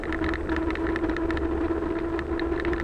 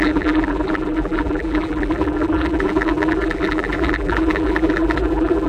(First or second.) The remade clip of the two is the second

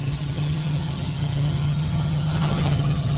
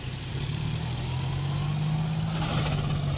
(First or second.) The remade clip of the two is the first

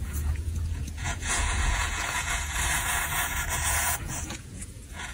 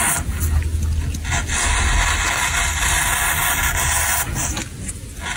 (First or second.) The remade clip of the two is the first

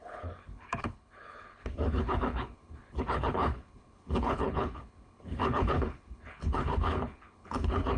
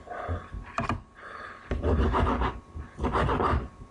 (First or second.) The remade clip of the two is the first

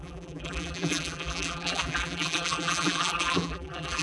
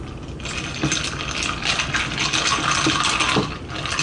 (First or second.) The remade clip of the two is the first